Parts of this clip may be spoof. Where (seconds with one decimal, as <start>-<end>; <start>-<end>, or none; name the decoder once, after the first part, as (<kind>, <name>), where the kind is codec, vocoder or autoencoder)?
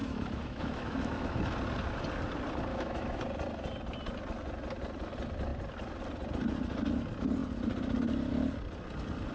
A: 0.0-1.4 (autoencoder, DAC-VAE); 2.7-3.2